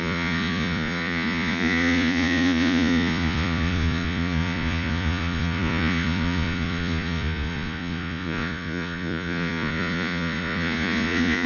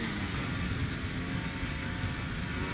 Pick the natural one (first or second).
second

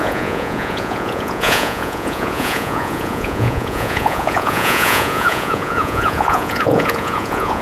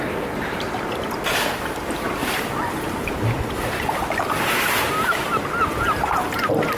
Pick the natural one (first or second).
second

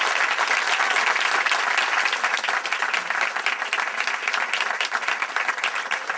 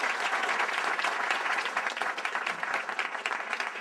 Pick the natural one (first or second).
first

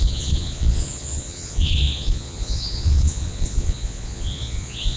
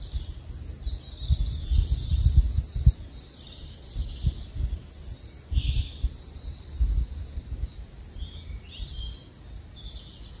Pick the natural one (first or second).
second